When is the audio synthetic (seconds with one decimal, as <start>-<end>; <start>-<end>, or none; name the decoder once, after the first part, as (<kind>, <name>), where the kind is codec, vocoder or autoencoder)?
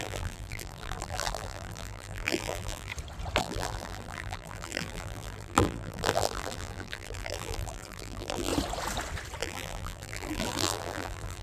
0.0-2.9 (vocoder, BigVGAN v2); 3.4-8.5; 9.4-11.4